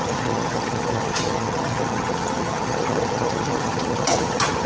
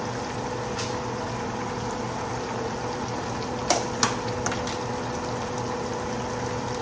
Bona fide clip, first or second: second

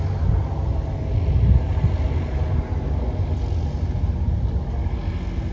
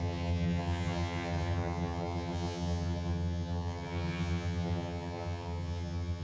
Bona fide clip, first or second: first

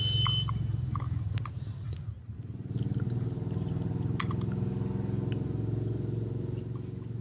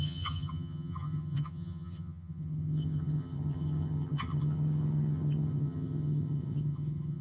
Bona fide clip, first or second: first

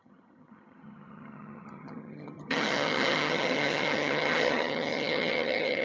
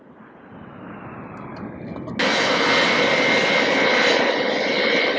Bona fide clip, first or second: second